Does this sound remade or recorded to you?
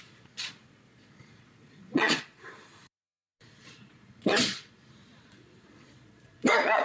remade